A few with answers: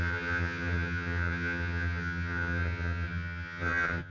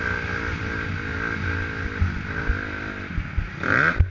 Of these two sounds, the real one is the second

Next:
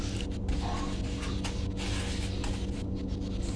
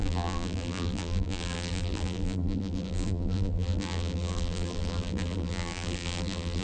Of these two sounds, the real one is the first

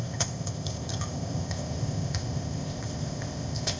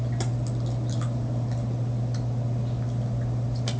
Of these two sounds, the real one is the second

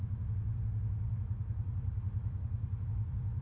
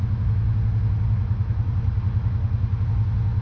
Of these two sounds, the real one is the second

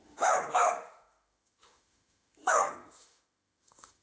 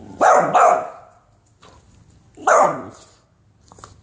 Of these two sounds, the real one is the second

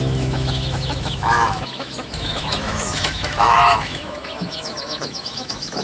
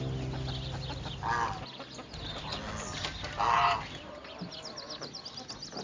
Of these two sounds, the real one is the second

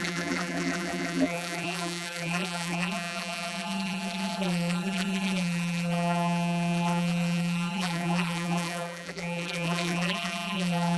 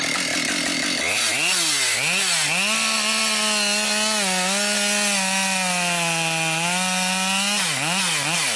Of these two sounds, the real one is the second